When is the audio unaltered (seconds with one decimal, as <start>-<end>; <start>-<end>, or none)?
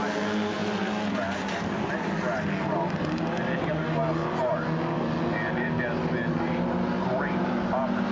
0.0-8.1